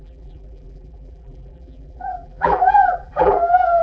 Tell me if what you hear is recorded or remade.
remade